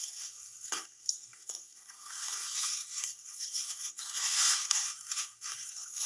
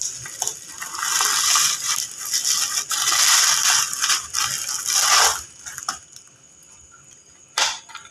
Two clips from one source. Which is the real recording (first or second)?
second